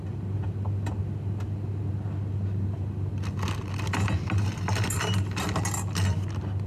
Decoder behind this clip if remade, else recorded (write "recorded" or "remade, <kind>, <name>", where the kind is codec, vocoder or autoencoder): recorded